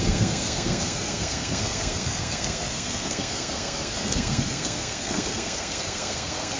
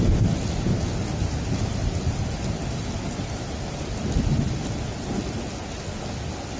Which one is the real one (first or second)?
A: second